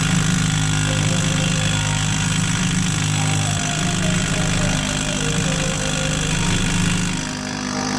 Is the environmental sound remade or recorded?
recorded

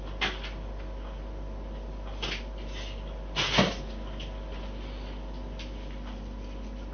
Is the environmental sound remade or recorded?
recorded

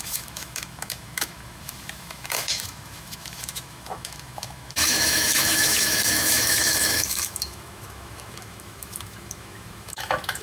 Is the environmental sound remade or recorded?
remade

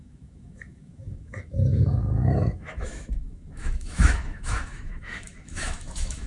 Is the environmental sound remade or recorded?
remade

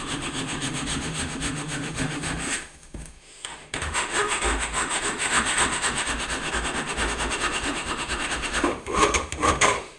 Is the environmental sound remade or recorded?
remade